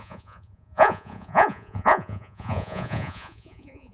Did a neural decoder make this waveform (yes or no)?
yes